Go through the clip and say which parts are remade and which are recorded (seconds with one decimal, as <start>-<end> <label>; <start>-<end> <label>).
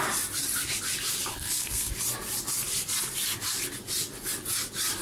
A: 0.0-1.3 recorded; 1.3-1.9 remade; 1.9-5.0 recorded